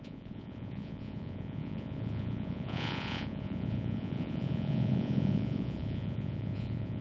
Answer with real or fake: fake